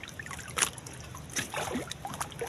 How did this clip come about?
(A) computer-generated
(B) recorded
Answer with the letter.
B